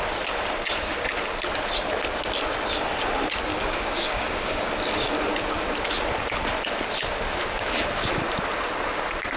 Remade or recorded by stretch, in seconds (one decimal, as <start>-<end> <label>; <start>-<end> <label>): 0.0-3.5 recorded; 3.5-4.7 remade; 4.7-9.4 recorded